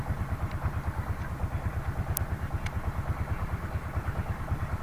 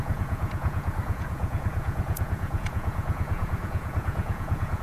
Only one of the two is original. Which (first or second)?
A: first